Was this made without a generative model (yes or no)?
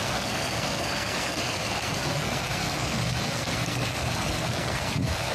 no